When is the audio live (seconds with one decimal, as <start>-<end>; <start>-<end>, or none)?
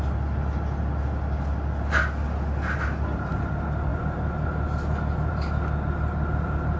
0.0-6.8